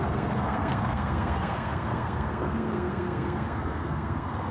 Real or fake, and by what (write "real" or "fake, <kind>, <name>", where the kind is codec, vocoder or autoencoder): fake, codec, SNAC